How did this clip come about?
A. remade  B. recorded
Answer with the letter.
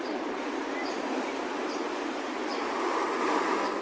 B